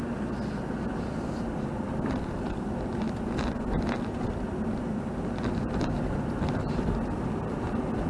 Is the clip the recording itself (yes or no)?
yes